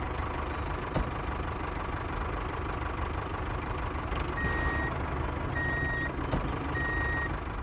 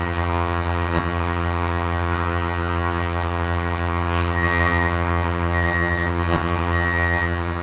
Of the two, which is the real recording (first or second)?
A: first